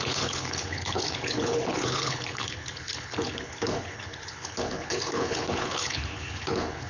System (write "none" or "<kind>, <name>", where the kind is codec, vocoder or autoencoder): codec, HILCodec